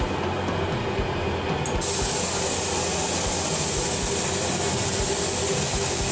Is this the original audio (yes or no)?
yes